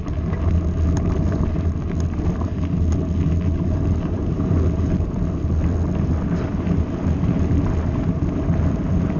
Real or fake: real